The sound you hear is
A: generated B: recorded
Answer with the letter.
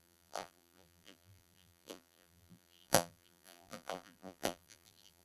A